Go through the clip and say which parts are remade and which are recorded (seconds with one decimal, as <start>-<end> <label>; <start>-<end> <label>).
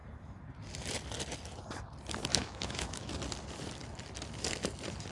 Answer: 0.0-2.3 recorded; 2.3-3.1 remade; 3.1-5.1 recorded